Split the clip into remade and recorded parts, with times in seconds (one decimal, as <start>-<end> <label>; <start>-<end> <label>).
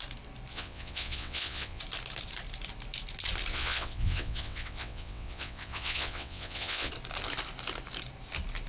0.0-0.5 recorded; 0.5-1.8 remade; 1.8-3.5 recorded; 3.5-6.9 remade; 6.9-8.7 recorded